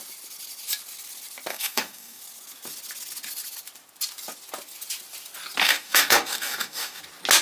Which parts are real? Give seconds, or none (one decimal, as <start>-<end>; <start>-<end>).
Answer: 0.0-1.5; 2.2-5.6; 7.0-7.4